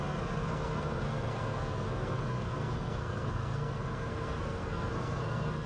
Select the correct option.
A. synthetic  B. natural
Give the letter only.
A